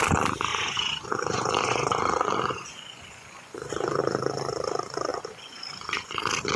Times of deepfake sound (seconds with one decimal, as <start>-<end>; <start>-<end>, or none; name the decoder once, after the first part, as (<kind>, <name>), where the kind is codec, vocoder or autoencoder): 0.5-4.0 (vocoder, Vocos); 5.1-6.1